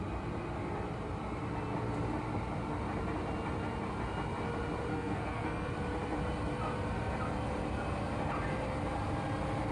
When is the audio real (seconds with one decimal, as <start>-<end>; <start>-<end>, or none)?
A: 0.0-4.9; 5.7-9.7